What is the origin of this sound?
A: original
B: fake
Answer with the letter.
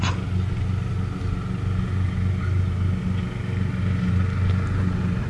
A